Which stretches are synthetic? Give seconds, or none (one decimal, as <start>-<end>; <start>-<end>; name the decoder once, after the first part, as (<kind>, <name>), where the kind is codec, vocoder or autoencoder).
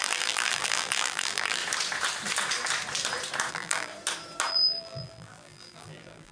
0.0-1.6 (vocoder, BigVGAN v2); 3.5-3.9; 4.5-6.3